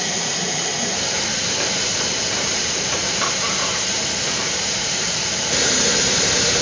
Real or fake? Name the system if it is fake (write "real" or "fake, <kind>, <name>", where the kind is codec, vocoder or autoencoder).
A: fake, vocoder, BigVGAN v2